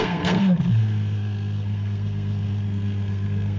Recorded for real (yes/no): no